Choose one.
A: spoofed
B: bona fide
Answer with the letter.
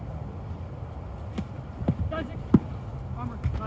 B